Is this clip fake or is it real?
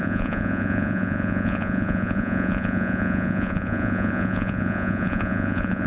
fake